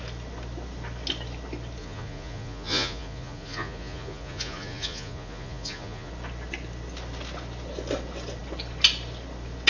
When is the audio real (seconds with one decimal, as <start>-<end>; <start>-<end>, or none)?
0.0-1.8; 6.1-9.7